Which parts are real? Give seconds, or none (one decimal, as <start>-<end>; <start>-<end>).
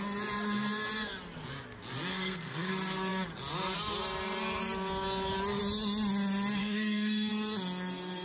0.0-2.1; 2.7-6.6; 7.3-8.2